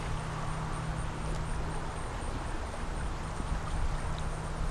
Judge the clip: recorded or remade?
recorded